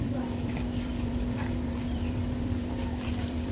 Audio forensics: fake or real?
fake